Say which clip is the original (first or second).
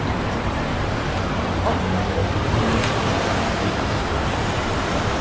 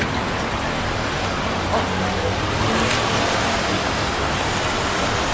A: second